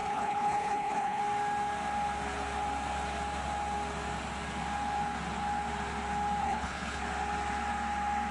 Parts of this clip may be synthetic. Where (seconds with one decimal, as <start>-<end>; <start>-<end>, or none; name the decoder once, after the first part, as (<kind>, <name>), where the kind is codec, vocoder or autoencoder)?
0.0-1.2 (codec, HILCodec); 6.4-7.0